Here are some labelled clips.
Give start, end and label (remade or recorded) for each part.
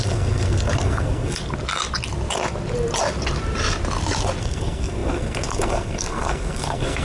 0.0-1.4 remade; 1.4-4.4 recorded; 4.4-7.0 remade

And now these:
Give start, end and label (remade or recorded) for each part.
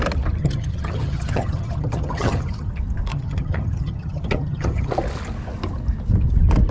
0.0-0.4 recorded; 0.4-2.7 remade; 2.7-3.1 recorded; 3.1-4.9 remade; 4.9-6.7 recorded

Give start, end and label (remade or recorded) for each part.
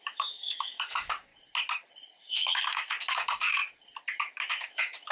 0.0-1.3 remade; 1.3-2.3 recorded; 2.3-3.6 remade; 3.6-4.3 recorded; 4.3-5.1 remade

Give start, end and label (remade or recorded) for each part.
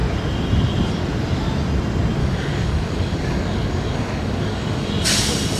0.0-2.2 recorded; 2.2-4.9 remade; 4.9-5.6 recorded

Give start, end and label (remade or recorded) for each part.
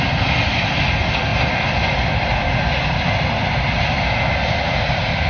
0.0-5.3 recorded